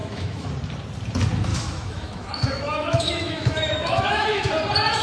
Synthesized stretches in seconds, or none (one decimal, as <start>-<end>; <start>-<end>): 0.0-0.5; 1.5-4.5